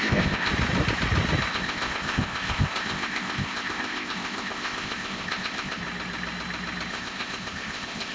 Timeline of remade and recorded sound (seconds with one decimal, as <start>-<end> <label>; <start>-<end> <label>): 0.0-0.5 remade; 0.5-1.5 recorded; 1.5-5.8 remade; 5.8-6.9 recorded; 6.9-8.1 remade